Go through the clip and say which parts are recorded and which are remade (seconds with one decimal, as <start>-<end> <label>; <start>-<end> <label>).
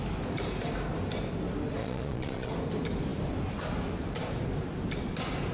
0.0-1.8 recorded; 1.8-2.5 remade; 2.5-5.5 recorded